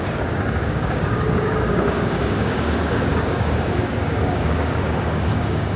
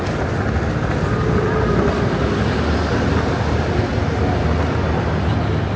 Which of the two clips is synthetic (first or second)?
first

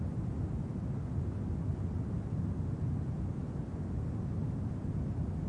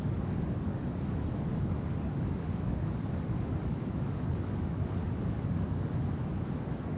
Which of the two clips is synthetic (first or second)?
second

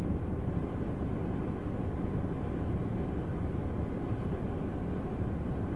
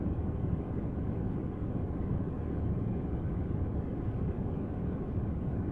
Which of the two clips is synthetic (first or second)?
second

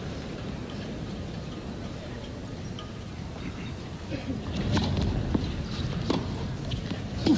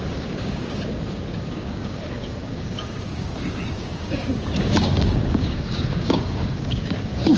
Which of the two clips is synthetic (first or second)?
second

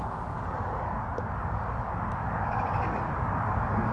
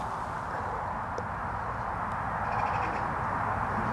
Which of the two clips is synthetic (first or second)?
first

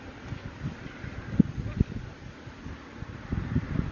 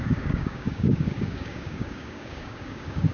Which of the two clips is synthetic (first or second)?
second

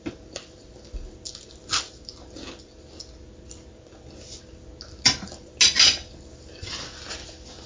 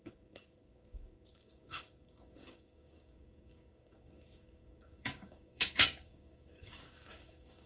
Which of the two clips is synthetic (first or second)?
second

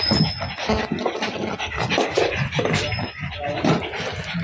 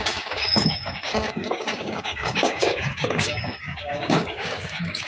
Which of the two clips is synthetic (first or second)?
second